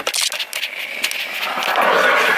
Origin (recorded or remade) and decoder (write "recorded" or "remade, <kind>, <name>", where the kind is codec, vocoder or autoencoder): recorded